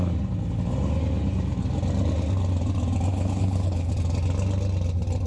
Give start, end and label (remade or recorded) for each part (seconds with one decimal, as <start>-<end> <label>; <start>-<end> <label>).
0.0-3.1 recorded; 3.1-3.9 remade; 3.9-5.3 recorded